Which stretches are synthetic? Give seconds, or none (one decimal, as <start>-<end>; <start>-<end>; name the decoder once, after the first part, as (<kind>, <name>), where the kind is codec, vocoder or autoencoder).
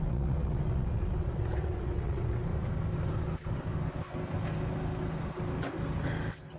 0.0-2.5 (vocoder, WaveNeXt)